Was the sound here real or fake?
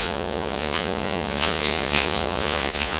fake